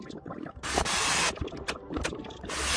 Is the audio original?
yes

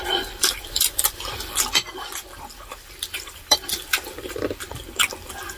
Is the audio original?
no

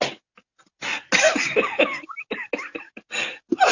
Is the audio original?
yes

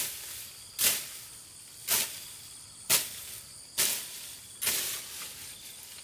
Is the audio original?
yes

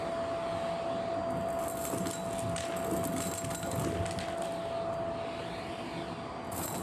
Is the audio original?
yes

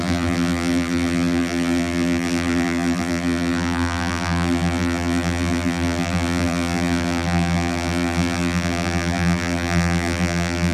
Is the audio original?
no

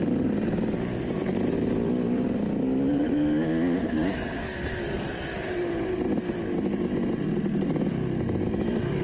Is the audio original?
yes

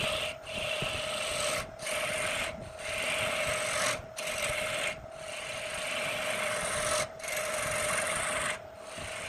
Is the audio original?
yes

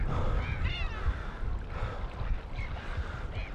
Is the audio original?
yes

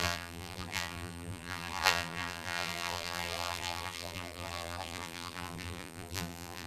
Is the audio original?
no